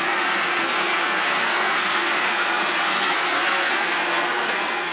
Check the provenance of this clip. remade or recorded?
remade